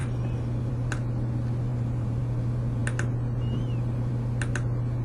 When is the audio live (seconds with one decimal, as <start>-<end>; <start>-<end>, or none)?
0.0-1.7; 2.2-5.0

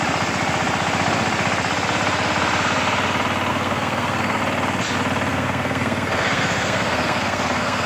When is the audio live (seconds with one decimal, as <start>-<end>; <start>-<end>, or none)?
0.0-3.5; 4.4-5.3

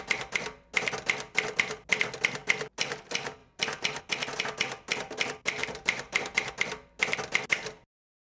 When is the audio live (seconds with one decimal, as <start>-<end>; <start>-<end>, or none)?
0.0-3.4; 4.0-5.6; 6.5-8.4

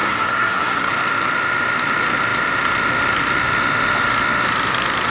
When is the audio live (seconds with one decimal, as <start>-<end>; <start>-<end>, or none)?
0.9-5.1

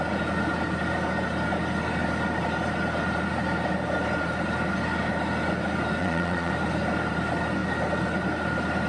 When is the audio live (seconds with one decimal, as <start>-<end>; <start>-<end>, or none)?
0.0-6.0; 6.5-8.9

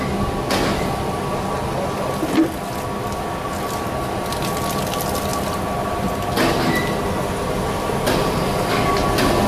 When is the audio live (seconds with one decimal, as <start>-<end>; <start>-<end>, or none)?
0.0-9.5